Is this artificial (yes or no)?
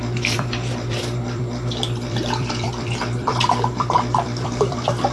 yes